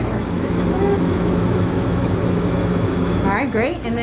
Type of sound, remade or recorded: remade